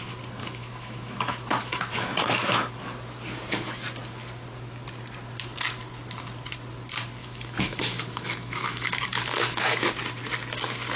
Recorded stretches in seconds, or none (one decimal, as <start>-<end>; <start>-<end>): 0.0-0.4; 2.6-7.2; 9.9-11.0